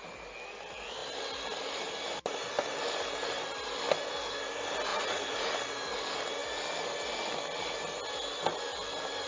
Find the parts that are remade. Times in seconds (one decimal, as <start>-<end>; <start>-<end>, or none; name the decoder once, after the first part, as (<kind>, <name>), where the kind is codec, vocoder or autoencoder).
4.9-5.5 (vocoder, Vocos)